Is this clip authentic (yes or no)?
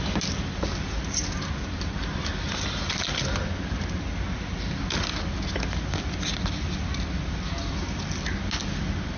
yes